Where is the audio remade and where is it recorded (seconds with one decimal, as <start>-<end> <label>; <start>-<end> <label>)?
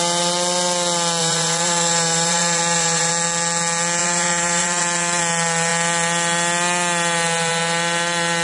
0.0-1.2 recorded; 1.2-3.1 remade; 3.1-4.0 recorded; 4.0-5.2 remade; 5.2-8.4 recorded